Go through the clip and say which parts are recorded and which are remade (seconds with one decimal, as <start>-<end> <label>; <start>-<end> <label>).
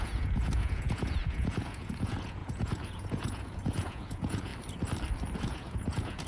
0.0-4.5 remade; 4.5-5.4 recorded; 5.4-6.3 remade